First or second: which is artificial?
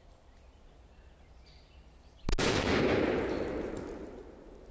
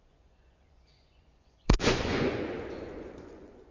second